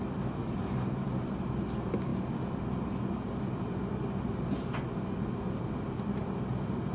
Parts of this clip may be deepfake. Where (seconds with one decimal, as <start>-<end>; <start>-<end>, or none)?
none